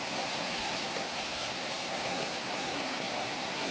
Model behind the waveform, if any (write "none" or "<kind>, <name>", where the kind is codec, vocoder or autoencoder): codec, SNAC